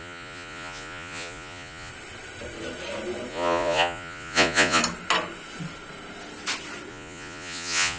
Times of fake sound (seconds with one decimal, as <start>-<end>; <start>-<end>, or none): 0.0-1.9; 3.3-4.8; 6.9-8.0